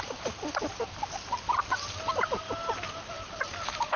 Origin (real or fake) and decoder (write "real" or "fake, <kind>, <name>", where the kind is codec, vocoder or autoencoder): real